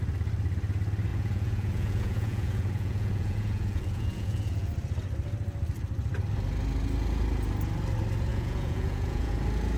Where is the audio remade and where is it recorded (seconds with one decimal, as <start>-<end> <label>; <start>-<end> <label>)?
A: 0.0-1.1 recorded; 1.1-4.7 remade; 4.7-8.3 recorded; 8.3-9.3 remade; 9.3-9.8 recorded